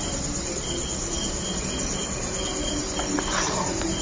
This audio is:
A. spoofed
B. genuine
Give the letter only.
B